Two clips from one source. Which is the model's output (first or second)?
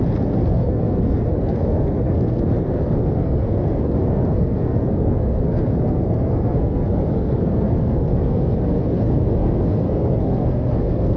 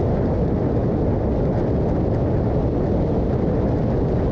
first